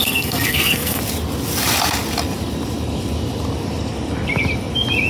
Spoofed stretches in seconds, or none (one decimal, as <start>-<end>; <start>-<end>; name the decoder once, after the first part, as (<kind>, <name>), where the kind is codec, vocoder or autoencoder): 0.0-1.0 (codec, SNAC)